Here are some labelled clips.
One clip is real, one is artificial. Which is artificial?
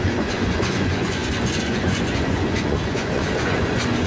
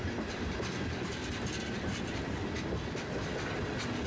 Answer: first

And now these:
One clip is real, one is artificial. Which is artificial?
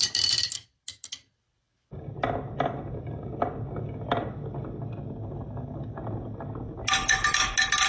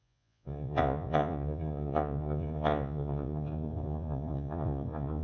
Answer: second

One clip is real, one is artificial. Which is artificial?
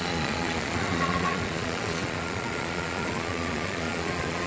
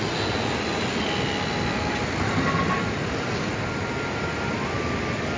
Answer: first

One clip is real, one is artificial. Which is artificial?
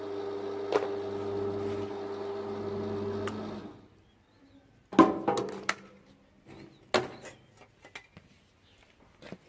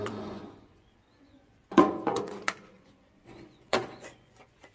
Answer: second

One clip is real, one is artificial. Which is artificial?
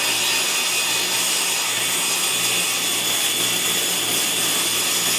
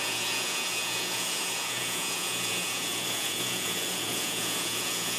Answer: second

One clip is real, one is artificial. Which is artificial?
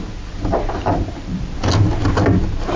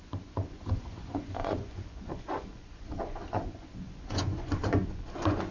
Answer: second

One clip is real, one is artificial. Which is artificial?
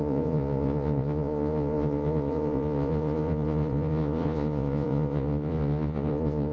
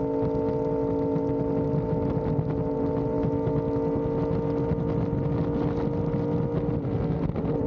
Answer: first